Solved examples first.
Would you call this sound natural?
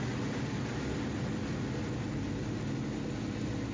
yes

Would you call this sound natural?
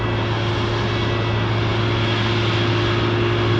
yes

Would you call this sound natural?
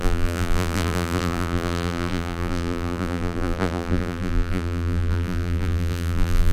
no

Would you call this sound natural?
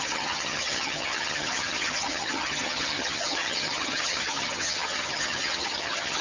no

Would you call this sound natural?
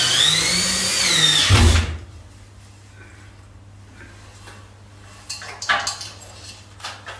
yes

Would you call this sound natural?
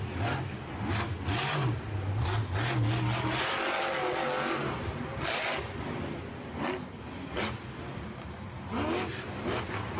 yes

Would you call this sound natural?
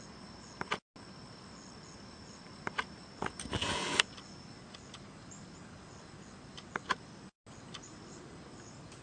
yes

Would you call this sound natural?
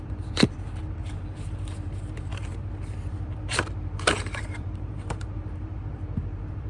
no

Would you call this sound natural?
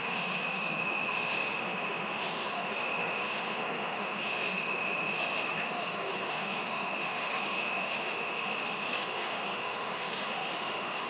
no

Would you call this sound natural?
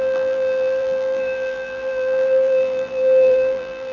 no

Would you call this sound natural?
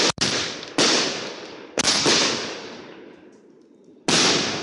yes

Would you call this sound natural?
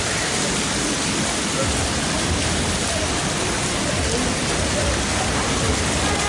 yes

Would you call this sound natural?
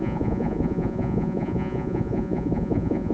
no